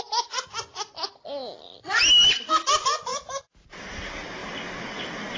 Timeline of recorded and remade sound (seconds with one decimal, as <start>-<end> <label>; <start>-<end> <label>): 0.0-3.1 recorded; 3.1-4.0 remade; 4.0-5.4 recorded